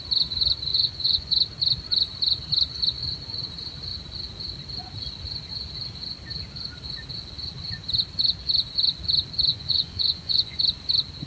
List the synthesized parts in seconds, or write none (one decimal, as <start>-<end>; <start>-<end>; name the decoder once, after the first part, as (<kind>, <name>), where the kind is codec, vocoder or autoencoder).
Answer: 0.7-1.3 (vocoder, Vocos); 9.5-10.6

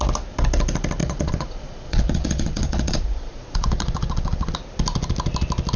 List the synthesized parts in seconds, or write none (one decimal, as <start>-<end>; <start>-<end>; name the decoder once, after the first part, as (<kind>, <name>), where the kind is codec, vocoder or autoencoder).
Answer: 1.0-4.5 (vocoder, Vocos)

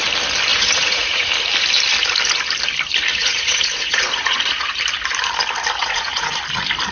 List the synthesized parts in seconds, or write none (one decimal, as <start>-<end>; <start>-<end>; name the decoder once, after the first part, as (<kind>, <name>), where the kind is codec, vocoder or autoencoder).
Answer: 0.5-1.3 (vocoder, Vocos); 3.1-4.7; 5.8-6.4

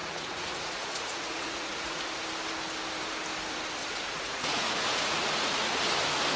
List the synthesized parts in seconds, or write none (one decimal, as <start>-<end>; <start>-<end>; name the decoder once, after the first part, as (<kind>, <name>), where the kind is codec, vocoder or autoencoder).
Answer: 0.0-2.0 (vocoder, Vocos); 3.8-5.7